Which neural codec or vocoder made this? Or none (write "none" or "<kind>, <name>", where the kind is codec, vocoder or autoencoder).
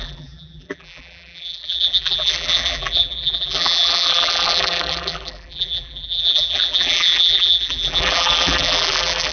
vocoder, BigVGAN v2